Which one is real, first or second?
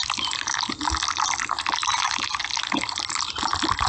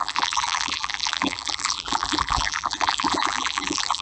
first